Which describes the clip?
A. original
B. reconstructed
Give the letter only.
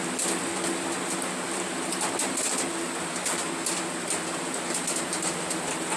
A